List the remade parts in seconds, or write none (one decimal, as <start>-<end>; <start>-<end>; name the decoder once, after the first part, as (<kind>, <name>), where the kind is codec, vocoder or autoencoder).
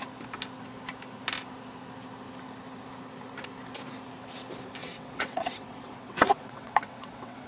4.8-7.5 (vocoder, WaveNeXt)